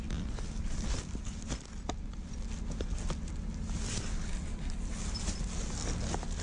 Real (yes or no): yes